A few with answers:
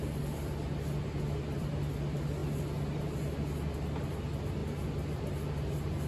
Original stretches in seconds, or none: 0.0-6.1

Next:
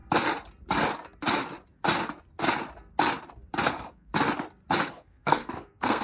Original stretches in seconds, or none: 0.0-3.6; 4.1-4.9

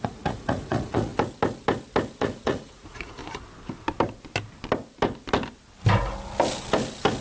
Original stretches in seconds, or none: 1.1-2.2; 3.2-7.2

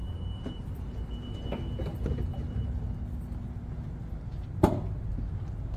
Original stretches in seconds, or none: 0.8-2.3; 2.8-5.8

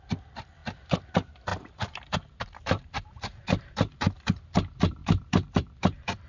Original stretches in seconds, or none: 0.0-1.5; 4.0-5.0

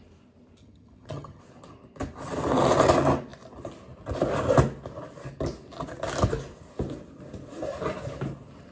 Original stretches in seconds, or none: 0.0-0.6; 1.4-8.7